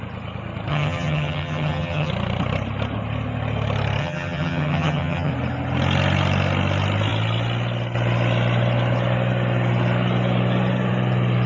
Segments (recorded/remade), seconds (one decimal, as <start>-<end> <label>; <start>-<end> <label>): 0.0-0.7 recorded; 0.7-2.1 remade; 2.1-4.0 recorded; 4.0-5.3 remade; 5.3-11.5 recorded